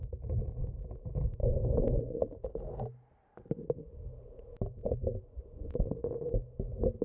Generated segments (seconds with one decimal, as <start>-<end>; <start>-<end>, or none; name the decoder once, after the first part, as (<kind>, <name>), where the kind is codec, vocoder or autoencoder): 0.0-0.7 (vocoder, Vocos); 1.4-2.6; 4.8-5.9

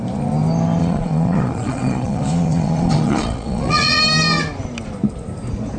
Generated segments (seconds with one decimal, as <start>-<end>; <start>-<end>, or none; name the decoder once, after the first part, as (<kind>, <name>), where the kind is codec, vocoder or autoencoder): 0.8-4.0 (vocoder, Vocos)

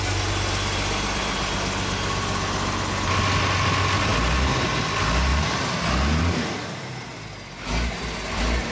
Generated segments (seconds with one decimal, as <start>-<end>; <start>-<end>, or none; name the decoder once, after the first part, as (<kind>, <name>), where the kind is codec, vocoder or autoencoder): none

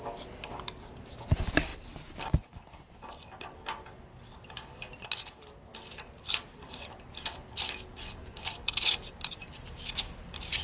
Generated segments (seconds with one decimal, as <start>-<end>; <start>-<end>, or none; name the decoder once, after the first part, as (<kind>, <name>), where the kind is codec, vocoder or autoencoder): none

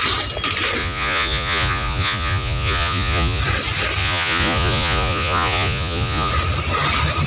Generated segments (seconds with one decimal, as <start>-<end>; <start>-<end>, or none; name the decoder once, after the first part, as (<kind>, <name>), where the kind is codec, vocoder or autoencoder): 0.8-3.4 (vocoder, Vocos); 4.0-6.3